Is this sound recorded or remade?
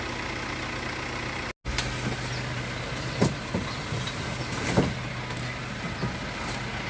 recorded